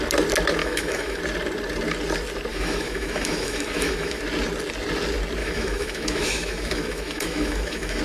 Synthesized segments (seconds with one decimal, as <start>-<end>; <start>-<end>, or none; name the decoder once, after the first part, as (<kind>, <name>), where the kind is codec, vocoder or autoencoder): 0.6-1.2 (autoencoder, DAC-VAE); 2.5-4.2; 5.4-8.0